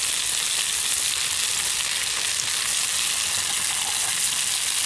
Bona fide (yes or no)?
yes